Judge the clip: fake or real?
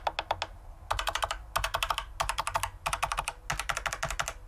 real